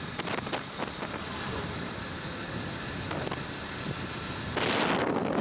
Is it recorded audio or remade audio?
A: recorded